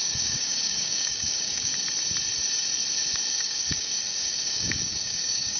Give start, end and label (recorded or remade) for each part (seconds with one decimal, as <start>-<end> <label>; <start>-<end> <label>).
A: 0.0-1.7 remade; 1.7-3.3 recorded; 3.3-5.6 remade